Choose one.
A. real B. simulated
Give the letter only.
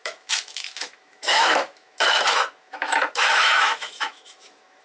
B